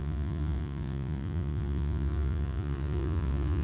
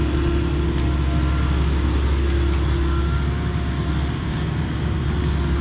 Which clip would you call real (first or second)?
second